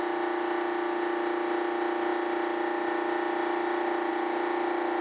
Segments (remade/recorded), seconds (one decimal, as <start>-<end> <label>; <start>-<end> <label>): 0.0-5.0 recorded